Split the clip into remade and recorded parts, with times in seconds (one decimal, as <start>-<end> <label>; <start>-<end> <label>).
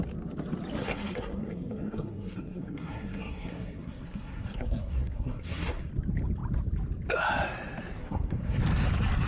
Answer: 0.0-0.8 recorded; 0.8-5.9 remade; 5.9-8.0 recorded; 8.0-8.6 remade; 8.6-9.3 recorded